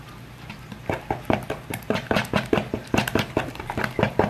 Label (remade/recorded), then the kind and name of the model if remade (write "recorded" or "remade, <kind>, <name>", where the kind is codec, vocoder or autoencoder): recorded